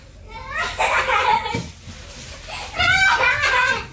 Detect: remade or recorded recorded